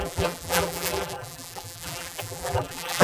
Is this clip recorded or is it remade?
remade